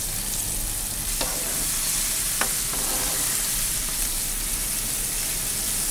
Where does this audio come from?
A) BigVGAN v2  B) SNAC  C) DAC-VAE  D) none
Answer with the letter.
D